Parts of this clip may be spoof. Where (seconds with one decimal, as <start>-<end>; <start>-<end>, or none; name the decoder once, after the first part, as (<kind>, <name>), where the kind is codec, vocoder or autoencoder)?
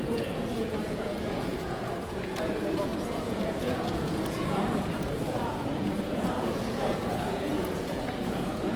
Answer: 0.0-8.8 (vocoder, Vocos)